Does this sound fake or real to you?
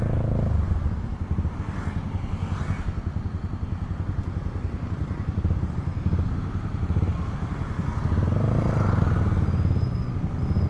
real